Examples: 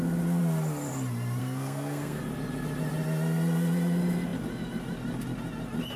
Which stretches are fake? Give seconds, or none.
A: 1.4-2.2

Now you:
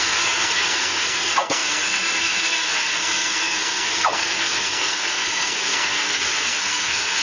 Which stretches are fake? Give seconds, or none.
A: 0.0-7.2

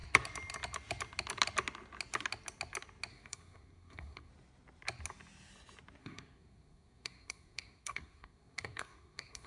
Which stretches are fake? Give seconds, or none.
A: 3.1-4.3; 6.0-9.5

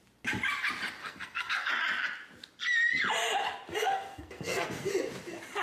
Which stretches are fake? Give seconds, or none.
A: 1.0-1.7; 3.7-4.9

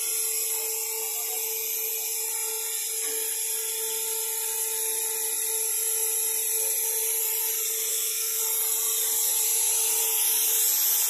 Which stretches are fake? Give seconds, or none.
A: 7.9-8.4